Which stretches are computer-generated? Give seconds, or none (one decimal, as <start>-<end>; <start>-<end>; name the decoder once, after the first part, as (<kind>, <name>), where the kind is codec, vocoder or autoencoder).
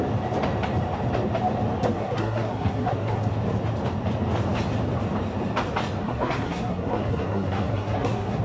1.8-3.3 (codec, SNAC); 6.0-8.4